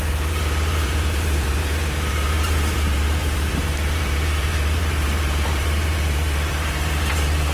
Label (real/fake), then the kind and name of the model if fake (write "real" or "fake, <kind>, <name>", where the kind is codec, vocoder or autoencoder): fake, vocoder, BigVGAN v2